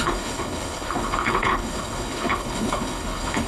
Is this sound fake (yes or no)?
yes